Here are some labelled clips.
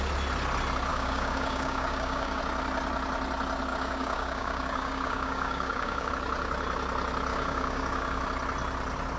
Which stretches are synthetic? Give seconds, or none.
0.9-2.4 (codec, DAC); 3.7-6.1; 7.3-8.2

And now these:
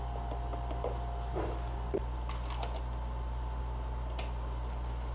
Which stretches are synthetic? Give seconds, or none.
none

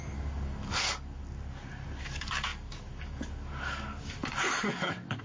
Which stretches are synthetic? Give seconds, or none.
0.0-1.2 (codec, DAC); 2.0-5.2

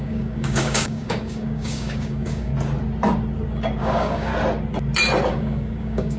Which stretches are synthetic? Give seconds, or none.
0.0-2.5 (codec, DAC); 3.8-4.3; 5.3-6.2

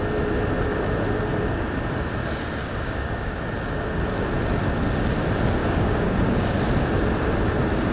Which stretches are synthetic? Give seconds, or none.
2.6-3.4 (codec, DAC); 5.6-6.6

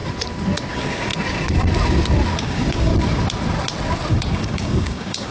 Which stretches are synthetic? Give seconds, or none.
0.7-1.1 (codec, DAC); 2.4-2.9; 4.1-5.3